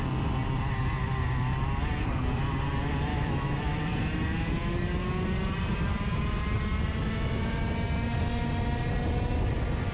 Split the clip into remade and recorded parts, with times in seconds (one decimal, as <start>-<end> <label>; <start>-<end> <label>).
0.0-3.1 recorded; 3.1-3.8 remade; 3.8-7.0 recorded; 7.0-7.6 remade; 7.6-9.9 recorded